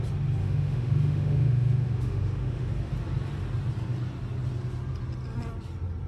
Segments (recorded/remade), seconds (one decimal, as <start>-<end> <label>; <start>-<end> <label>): 0.0-0.4 recorded; 0.4-2.7 remade; 2.7-6.1 recorded